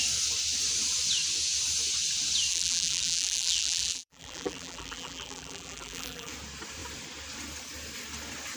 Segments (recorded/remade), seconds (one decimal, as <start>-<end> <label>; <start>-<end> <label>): 0.0-2.5 recorded; 2.5-6.3 remade; 6.3-8.6 recorded